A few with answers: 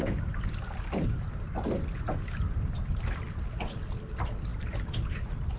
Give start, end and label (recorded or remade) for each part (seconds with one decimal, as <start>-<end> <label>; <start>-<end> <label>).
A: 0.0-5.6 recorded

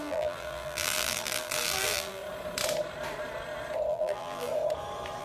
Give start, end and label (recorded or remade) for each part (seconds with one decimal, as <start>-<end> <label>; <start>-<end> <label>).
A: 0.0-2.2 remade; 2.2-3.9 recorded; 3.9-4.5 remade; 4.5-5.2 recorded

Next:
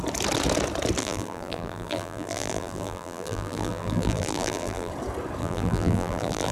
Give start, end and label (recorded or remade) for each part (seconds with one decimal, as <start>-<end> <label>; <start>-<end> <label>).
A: 0.0-1.0 recorded; 1.0-4.9 remade; 4.9-5.4 recorded; 5.4-6.5 remade

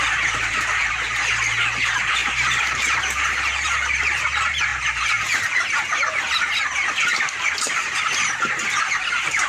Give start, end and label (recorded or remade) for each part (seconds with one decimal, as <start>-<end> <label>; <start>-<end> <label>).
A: 0.0-2.2 remade; 2.2-3.2 recorded; 3.2-4.7 remade; 4.7-7.2 recorded; 7.2-9.5 remade

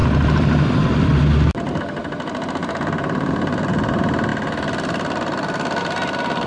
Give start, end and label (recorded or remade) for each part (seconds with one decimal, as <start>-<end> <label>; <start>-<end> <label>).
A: 0.0-1.8 remade; 1.8-2.6 recorded; 2.6-3.3 remade; 3.3-6.5 recorded

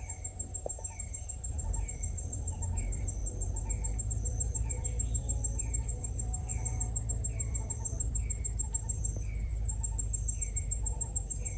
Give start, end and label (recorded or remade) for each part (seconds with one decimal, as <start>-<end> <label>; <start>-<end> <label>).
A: 0.0-3.2 remade; 3.2-4.1 recorded; 4.1-6.5 remade; 6.5-7.0 recorded; 7.0-9.5 remade; 9.5-10.4 recorded; 10.4-11.6 remade

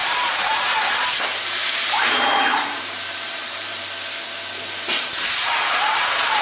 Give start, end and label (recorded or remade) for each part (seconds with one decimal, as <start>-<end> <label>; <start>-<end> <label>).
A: 0.0-3.8 remade; 3.8-4.9 recorded; 4.9-5.9 remade; 5.9-6.4 recorded